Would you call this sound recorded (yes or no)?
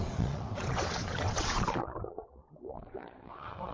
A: no